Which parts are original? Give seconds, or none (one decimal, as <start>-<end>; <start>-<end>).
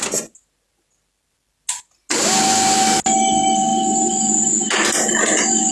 0.0-5.7